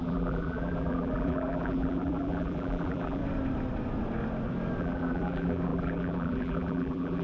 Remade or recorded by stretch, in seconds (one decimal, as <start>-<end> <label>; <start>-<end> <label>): 0.0-3.2 remade; 3.2-4.8 recorded; 4.8-7.2 remade